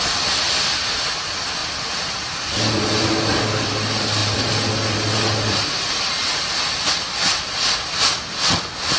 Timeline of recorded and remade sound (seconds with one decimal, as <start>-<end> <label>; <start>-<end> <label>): 0.0-1.6 recorded; 1.6-3.4 remade; 3.4-9.0 recorded